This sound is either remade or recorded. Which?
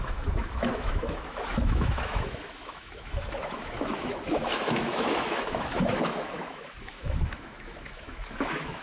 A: remade